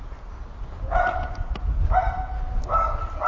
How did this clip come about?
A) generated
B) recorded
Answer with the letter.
B